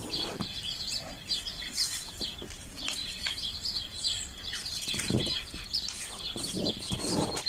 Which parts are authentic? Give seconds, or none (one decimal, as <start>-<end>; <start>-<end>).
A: 0.0-3.0; 4.0-7.5